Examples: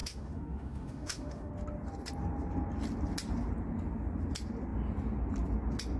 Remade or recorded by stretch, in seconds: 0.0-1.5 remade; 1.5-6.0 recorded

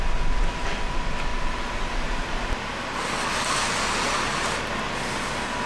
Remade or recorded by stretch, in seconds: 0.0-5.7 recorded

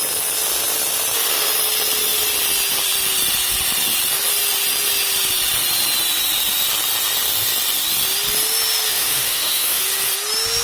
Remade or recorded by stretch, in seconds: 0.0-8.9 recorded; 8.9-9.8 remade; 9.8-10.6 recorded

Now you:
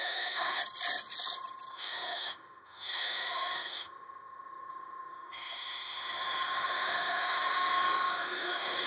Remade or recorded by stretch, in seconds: 0.0-0.6 remade; 0.6-1.7 recorded; 1.7-8.9 remade

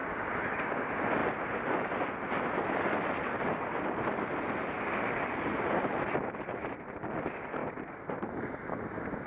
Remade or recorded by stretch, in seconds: 0.0-9.3 recorded

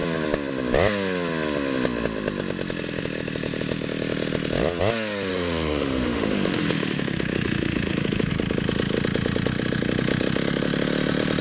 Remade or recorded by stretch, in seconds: 0.0-5.3 recorded; 5.3-8.3 remade; 8.3-11.4 recorded

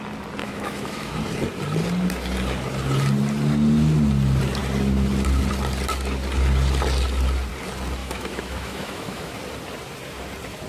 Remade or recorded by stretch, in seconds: 0.0-0.4 recorded; 0.4-1.2 remade; 1.2-8.0 recorded; 8.0-9.3 remade; 9.3-10.7 recorded